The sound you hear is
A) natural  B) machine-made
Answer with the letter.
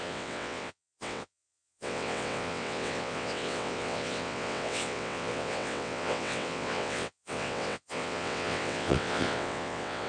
B